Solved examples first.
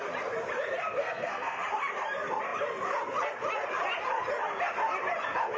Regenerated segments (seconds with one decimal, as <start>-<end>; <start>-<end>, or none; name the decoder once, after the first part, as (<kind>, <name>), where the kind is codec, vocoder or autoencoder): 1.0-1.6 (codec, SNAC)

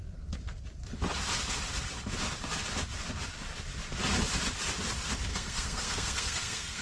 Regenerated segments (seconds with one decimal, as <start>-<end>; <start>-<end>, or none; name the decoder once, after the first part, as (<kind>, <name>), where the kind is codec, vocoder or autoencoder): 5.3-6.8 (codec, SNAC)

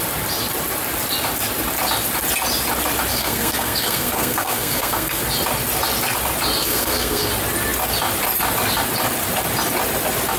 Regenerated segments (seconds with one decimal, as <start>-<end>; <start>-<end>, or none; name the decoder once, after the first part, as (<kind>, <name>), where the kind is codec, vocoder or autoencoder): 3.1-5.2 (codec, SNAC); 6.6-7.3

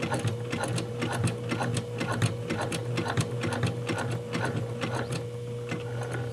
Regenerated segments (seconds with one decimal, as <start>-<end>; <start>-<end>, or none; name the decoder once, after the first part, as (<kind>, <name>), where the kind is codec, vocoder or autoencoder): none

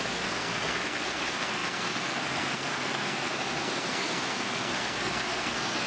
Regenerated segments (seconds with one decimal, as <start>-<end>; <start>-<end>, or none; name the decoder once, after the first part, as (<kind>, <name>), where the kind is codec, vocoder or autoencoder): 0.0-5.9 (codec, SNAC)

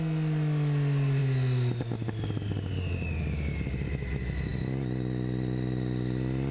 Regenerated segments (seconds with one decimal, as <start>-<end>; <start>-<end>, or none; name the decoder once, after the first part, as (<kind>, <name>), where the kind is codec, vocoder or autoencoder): none

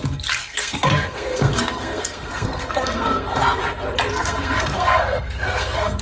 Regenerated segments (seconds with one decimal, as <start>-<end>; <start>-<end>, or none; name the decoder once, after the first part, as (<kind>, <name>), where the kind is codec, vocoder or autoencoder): 0.4-3.6 (codec, SNAC); 4.1-6.0